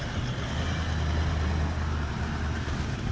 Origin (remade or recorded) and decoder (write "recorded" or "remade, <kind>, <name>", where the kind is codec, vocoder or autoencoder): recorded